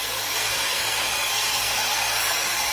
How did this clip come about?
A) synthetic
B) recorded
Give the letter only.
A